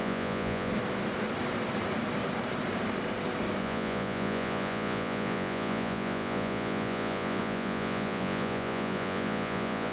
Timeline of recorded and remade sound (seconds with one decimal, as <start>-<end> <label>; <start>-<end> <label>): 0.0-0.7 remade; 0.7-3.6 recorded; 3.6-9.9 remade